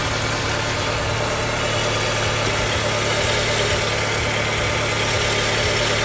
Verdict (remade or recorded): recorded